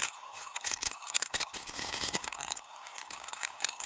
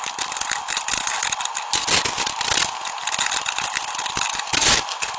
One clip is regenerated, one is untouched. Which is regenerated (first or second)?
first